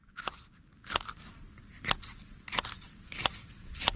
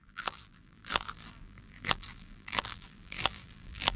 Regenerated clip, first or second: second